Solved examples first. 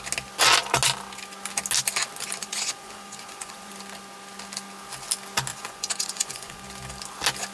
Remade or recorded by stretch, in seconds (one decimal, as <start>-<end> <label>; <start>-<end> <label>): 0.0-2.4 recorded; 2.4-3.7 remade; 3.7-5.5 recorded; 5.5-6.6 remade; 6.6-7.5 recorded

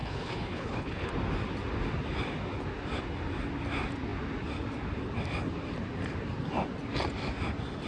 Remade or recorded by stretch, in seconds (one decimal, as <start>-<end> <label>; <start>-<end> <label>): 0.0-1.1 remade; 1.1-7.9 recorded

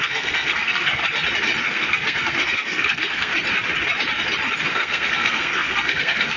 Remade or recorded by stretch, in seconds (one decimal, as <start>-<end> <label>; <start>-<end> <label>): 0.0-1.0 remade; 1.0-1.6 recorded; 1.6-3.3 remade; 3.3-4.7 recorded; 4.7-6.4 remade

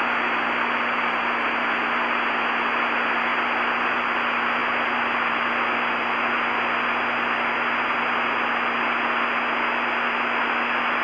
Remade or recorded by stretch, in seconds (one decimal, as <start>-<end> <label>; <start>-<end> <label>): 0.0-11.0 recorded

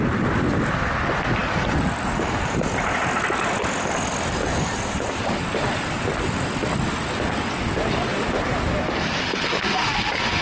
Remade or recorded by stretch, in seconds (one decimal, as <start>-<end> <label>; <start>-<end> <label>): 0.0-1.4 recorded; 1.4-2.0 remade; 2.0-4.4 recorded; 4.4-6.0 remade; 6.0-8.1 recorded; 8.1-9.6 remade; 9.6-10.4 recorded

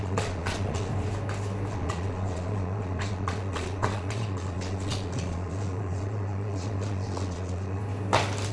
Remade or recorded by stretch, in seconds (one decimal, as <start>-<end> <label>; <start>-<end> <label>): 0.0-0.9 remade; 0.9-1.7 recorded; 1.7-7.8 remade; 7.8-8.5 recorded